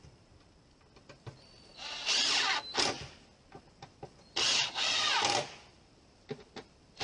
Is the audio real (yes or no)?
yes